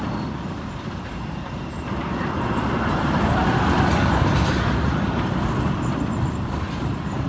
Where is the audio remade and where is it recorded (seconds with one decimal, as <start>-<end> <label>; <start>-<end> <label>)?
0.0-7.3 recorded